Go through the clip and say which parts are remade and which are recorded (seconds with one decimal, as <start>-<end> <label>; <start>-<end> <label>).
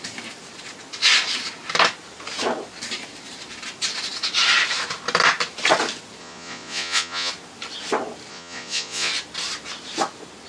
0.0-6.2 recorded; 6.2-7.3 remade; 7.3-8.3 recorded; 8.3-9.1 remade; 9.1-10.5 recorded